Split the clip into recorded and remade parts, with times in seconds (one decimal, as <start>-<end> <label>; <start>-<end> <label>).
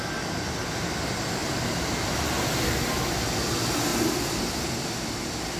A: 0.0-3.9 recorded; 3.9-4.4 remade; 4.4-5.6 recorded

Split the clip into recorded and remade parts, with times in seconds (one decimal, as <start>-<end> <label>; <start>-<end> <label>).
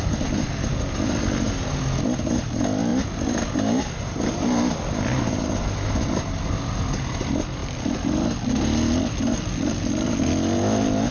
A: 0.0-11.1 recorded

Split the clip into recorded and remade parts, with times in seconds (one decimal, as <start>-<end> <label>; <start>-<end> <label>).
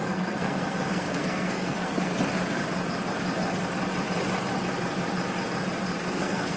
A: 0.0-2.1 remade; 2.1-6.1 recorded; 6.1-6.6 remade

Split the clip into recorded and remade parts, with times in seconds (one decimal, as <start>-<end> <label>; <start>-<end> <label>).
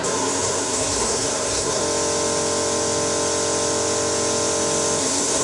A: 0.0-1.8 remade; 1.8-5.0 recorded; 5.0-5.4 remade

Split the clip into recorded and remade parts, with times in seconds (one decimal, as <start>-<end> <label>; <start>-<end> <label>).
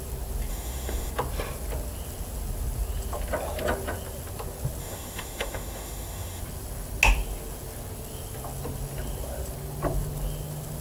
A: 0.0-0.5 recorded; 0.5-1.1 remade; 1.1-4.8 recorded; 4.8-6.4 remade; 6.4-10.8 recorded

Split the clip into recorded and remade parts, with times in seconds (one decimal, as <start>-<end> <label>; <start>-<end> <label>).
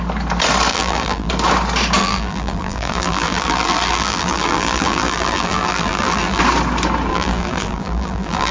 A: 0.0-0.7 recorded; 0.7-1.3 remade; 1.3-2.0 recorded; 2.0-6.4 remade; 6.4-7.1 recorded; 7.1-8.5 remade